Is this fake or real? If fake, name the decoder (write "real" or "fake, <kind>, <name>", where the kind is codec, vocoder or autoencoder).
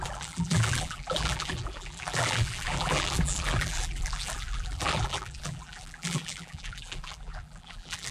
fake, vocoder, BigVGAN v2